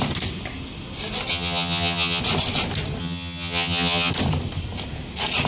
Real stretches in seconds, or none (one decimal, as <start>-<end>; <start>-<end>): 0.0-1.3; 2.2-3.0; 4.1-5.5